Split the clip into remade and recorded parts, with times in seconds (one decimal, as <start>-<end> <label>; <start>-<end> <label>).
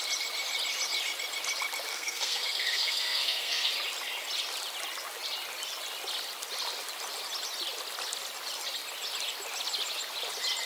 0.0-1.9 recorded; 1.9-3.7 remade; 3.7-10.7 recorded